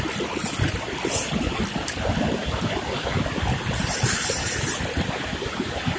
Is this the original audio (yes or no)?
yes